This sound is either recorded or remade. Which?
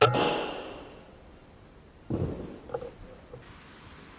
recorded